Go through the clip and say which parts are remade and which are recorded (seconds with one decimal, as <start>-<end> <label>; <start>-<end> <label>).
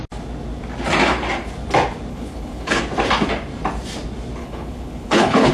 0.0-2.1 recorded; 2.1-2.8 remade; 2.8-4.4 recorded; 4.4-5.5 remade